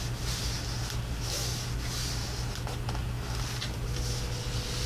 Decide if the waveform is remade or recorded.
recorded